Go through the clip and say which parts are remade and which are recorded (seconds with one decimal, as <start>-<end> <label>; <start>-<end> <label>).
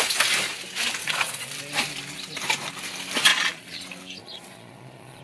0.0-1.0 recorded; 1.0-1.6 remade; 1.6-3.3 recorded; 3.3-3.8 remade; 3.8-4.2 recorded; 4.2-5.2 remade